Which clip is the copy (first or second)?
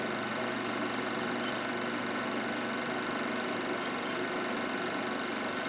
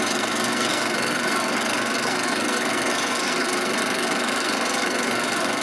second